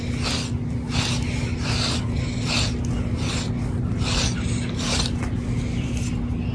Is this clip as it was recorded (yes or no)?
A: yes